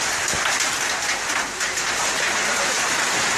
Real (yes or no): yes